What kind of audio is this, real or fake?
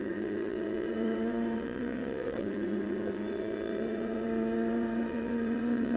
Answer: fake